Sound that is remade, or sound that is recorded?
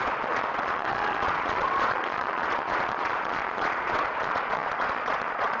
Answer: remade